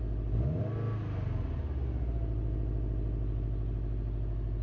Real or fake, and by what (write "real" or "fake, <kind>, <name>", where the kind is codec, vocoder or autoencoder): real